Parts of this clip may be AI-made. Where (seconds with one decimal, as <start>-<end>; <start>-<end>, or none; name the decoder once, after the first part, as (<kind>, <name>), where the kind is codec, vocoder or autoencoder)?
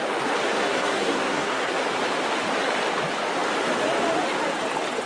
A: 0.6-1.8 (codec, SNAC)